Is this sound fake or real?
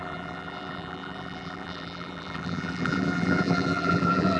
fake